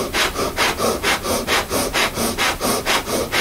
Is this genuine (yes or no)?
yes